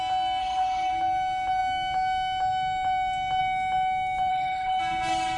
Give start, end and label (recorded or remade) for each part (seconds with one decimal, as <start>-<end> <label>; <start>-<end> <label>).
0.0-0.4 recorded; 0.4-0.9 remade; 0.9-4.3 recorded; 4.3-4.8 remade; 4.8-5.4 recorded